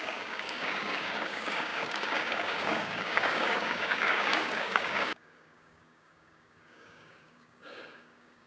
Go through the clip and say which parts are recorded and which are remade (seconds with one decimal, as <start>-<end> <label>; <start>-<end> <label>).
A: 0.0-8.5 remade